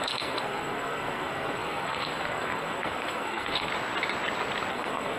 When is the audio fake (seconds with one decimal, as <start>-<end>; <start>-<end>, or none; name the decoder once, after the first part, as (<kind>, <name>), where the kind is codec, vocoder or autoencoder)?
0.0-3.7 (codec, SNAC); 4.7-5.2